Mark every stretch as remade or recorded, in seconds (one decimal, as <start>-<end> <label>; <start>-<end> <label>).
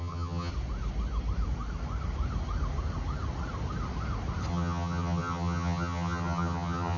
0.0-0.5 remade; 0.5-4.5 recorded; 4.5-7.0 remade